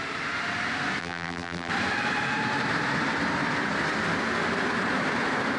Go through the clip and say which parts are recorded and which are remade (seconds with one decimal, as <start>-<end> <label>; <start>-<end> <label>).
0.0-1.0 recorded; 1.0-1.7 remade; 1.7-5.6 recorded